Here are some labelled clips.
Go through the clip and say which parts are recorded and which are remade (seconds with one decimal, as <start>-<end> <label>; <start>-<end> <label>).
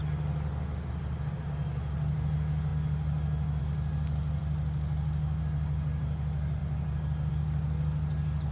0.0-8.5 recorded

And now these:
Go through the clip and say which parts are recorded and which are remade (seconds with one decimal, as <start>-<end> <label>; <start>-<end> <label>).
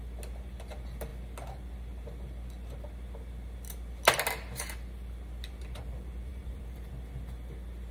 0.0-6.3 recorded; 6.3-6.9 remade; 6.9-7.9 recorded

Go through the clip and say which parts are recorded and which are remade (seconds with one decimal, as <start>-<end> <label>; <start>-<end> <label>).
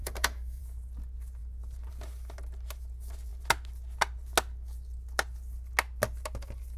0.0-0.6 remade; 0.6-6.8 recorded